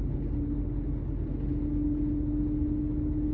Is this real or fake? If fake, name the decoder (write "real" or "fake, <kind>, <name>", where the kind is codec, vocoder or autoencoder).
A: real